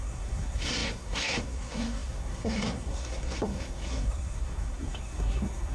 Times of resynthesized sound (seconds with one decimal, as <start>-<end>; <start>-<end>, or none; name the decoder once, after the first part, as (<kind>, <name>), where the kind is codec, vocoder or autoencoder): 0.0-5.7 (codec, SNAC)